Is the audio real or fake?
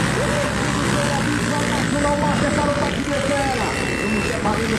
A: real